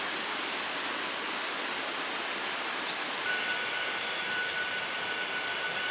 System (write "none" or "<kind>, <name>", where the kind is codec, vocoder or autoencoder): none